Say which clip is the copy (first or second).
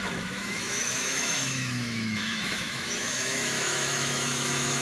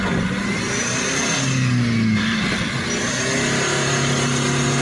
first